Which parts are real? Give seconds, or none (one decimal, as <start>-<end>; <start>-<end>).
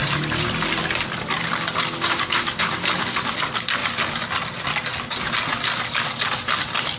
0.0-7.0